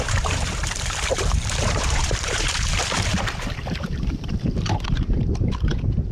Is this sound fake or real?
fake